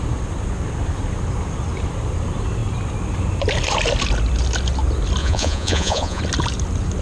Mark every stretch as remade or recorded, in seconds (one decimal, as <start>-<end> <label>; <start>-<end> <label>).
0.0-5.2 recorded; 5.2-6.2 remade; 6.2-7.0 recorded